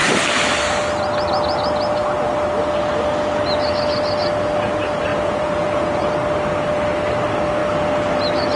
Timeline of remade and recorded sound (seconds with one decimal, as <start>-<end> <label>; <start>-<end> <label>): 0.0-5.1 recorded; 5.1-6.1 remade; 6.1-8.6 recorded